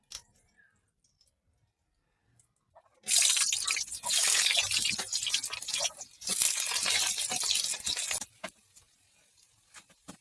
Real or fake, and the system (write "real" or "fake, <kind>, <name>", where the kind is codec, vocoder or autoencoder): real